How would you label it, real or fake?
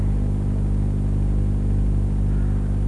real